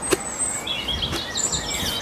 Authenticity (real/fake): real